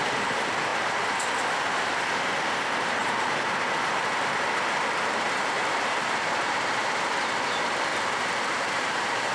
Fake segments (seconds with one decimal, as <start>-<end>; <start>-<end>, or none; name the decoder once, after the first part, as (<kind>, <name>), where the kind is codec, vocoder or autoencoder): 3.0-6.7 (vocoder, BigVGAN v2); 7.9-9.3